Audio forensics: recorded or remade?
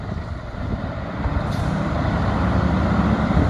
recorded